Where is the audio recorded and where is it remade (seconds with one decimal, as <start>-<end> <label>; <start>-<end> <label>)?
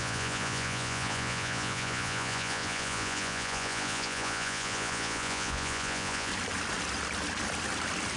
0.0-6.3 remade; 6.3-8.2 recorded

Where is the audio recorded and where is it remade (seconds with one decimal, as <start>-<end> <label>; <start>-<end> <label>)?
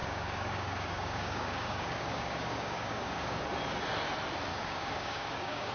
0.0-3.4 remade; 3.4-4.5 recorded; 4.5-5.7 remade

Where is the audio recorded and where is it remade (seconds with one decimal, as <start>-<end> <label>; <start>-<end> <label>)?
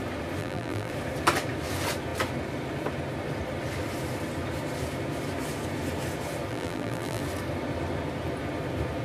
0.0-0.4 recorded; 0.4-0.9 remade; 0.9-6.5 recorded; 6.5-7.2 remade; 7.2-9.0 recorded